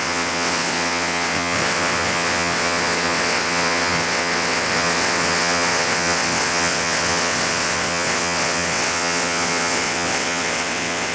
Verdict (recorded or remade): remade